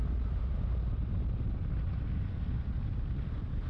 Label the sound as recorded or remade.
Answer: recorded